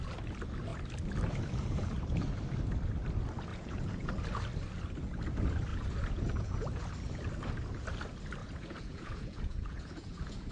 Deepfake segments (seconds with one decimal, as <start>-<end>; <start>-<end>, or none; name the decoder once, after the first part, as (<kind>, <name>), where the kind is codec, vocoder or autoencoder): 3.5-4.1 (vocoder, Vocos); 5.7-6.9; 8.4-10.5